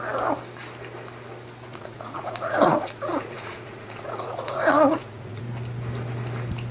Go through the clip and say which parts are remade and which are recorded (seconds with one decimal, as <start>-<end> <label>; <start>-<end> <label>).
0.0-1.7 recorded; 1.7-5.4 remade; 5.4-6.7 recorded